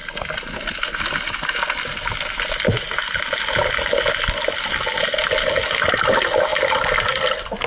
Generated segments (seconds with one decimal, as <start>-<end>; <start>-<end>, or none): none